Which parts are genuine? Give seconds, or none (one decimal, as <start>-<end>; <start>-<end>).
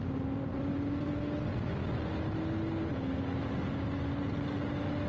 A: 0.0-0.5; 1.1-5.1